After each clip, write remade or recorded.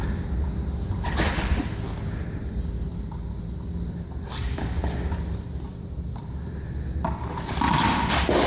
recorded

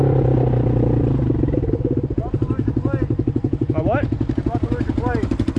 recorded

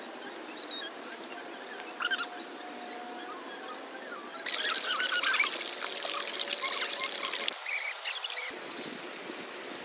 recorded